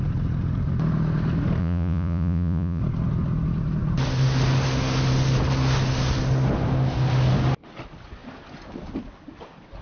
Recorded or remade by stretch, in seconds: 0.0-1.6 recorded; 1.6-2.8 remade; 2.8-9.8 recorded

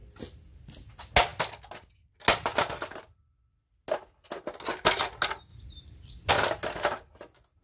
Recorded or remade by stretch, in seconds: 0.0-0.9 remade; 0.9-2.5 recorded; 2.5-3.0 remade; 3.0-5.5 recorded; 5.5-6.3 remade; 6.3-7.6 recorded